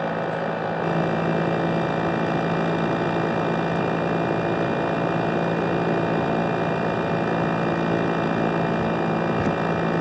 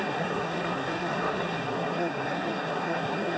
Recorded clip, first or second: first